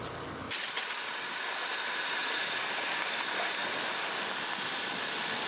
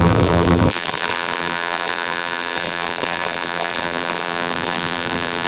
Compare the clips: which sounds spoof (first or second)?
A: second